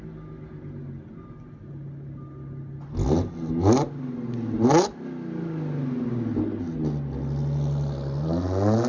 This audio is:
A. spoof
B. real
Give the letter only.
B